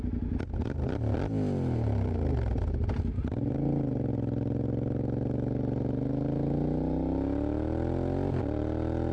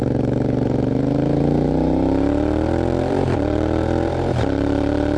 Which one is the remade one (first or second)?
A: second